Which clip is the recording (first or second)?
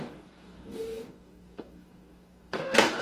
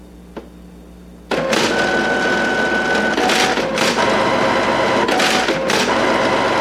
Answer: second